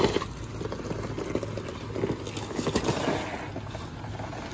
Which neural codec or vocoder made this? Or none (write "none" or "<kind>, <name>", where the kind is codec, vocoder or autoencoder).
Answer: none